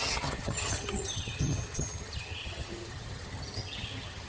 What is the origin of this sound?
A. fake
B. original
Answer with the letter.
A